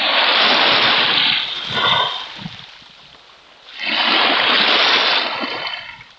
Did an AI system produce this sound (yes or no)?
no